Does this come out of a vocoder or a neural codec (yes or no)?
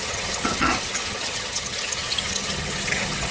yes